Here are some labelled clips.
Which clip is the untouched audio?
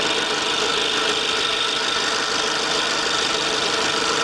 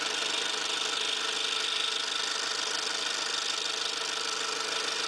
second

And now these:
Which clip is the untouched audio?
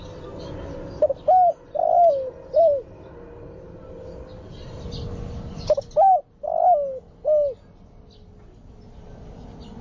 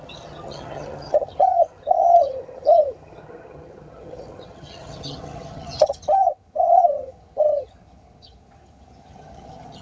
first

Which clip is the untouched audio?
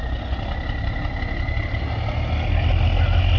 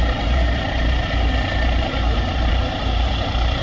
first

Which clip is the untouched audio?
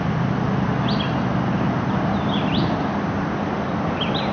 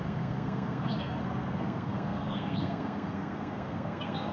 first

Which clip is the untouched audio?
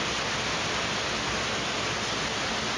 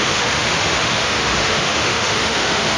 first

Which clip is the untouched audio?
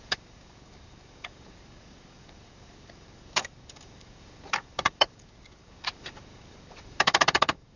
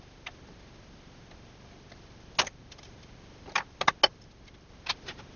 second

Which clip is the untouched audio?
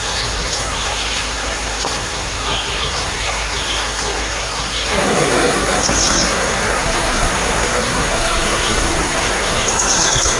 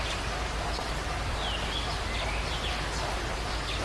second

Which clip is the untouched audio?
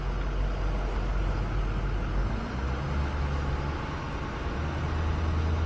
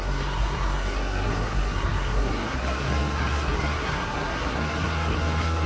first